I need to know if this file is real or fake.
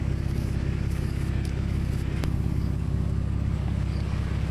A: fake